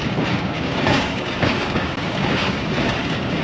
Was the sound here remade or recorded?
remade